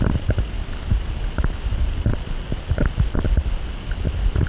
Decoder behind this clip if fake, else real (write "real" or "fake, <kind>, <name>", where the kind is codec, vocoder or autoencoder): real